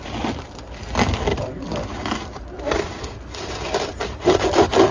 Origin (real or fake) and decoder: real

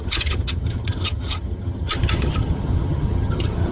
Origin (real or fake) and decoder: fake, vocoder, HiFi-GAN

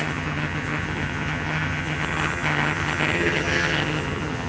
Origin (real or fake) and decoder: fake, vocoder, HiFi-GAN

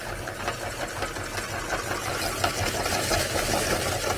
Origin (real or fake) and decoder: real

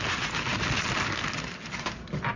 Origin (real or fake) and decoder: real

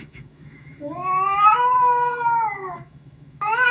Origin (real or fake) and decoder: fake, autoencoder, DAC-VAE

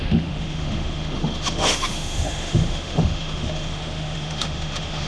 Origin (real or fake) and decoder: fake, autoencoder, DAC-VAE